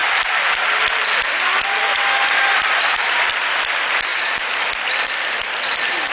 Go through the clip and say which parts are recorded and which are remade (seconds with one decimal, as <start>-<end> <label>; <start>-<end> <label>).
0.0-3.3 remade; 3.3-4.1 recorded; 4.1-6.1 remade